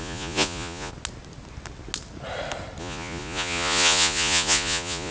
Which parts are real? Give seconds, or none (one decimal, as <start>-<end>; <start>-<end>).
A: 0.9-2.8